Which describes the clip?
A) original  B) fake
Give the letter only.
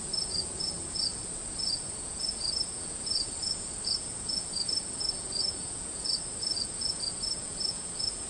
B